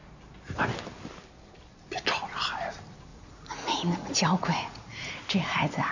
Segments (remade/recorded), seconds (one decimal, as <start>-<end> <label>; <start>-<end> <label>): 0.0-3.1 recorded; 3.1-5.1 remade; 5.1-5.9 recorded